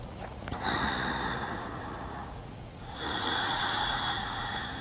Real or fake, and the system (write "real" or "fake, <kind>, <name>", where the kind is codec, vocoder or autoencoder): fake, vocoder, Vocos